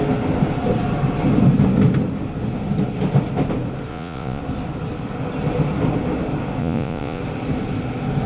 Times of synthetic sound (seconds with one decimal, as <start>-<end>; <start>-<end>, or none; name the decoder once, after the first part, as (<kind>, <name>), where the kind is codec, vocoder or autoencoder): 3.9-4.4 (vocoder, Vocos); 6.6-7.2